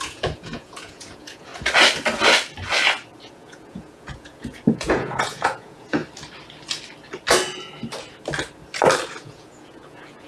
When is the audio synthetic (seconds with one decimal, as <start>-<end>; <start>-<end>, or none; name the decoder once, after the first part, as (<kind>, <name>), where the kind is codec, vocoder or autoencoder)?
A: 0.0-1.5 (vocoder, Vocos); 3.2-6.0; 9.1-10.3